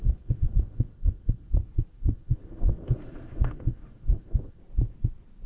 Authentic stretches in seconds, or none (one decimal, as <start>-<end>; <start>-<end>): 1.5-1.9; 4.6-5.5